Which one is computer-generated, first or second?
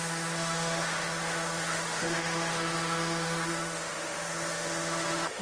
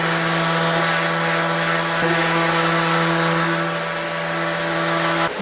first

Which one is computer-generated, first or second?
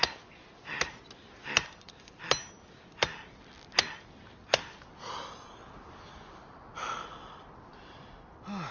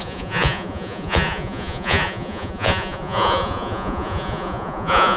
second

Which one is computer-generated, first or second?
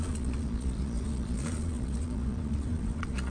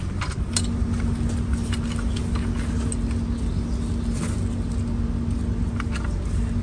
first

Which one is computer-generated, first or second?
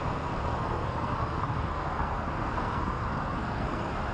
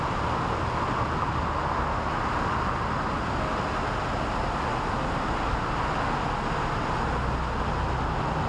first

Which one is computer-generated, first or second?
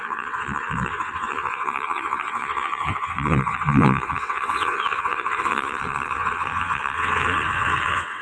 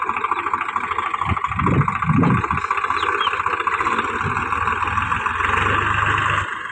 first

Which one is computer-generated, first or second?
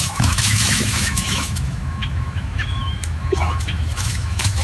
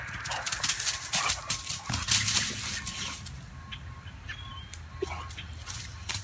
first